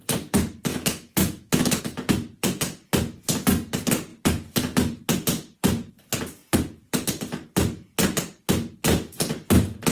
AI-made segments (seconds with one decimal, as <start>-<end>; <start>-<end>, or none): 0.7-1.8